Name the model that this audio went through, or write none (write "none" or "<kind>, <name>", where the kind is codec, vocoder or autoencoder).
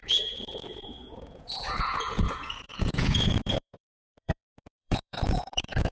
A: vocoder, Vocos